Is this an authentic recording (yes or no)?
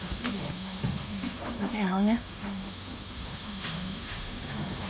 no